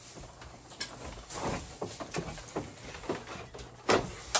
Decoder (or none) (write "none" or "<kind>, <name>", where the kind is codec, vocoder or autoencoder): none